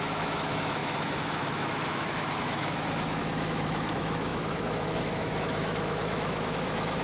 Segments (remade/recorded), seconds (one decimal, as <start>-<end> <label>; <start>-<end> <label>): 0.0-7.0 remade